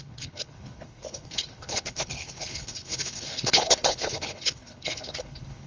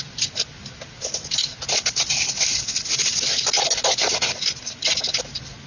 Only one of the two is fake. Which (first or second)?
first